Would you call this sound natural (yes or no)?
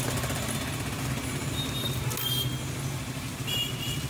yes